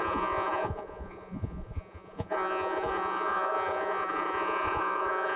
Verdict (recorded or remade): remade